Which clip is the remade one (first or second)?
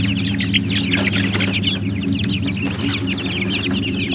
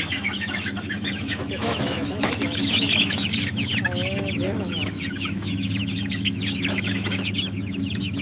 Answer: second